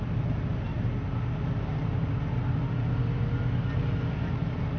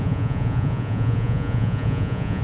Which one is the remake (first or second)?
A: second